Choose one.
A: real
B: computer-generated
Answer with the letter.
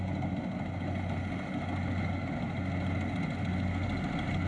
A